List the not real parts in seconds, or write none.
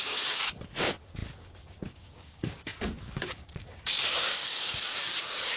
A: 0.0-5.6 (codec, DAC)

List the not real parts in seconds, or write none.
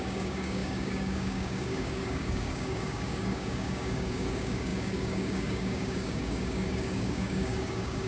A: 0.0-8.1 (codec, DAC)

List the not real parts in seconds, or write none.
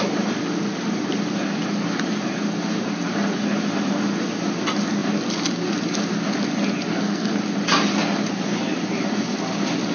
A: 6.9-7.4 (codec, SNAC)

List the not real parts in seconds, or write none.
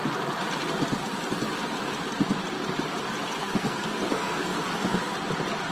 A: 3.4-4.6 (codec, SNAC)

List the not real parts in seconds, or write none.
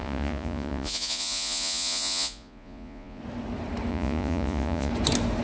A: 0.0-3.2 (vocoder, Vocos); 3.9-4.9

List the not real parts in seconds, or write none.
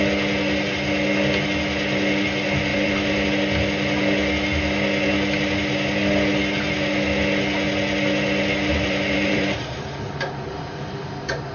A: 2.7-3.3 (vocoder, BigVGAN v2); 8.7-11.1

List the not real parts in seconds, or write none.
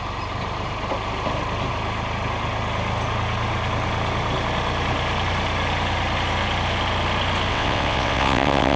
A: 7.5-8.8 (vocoder, WaveNeXt)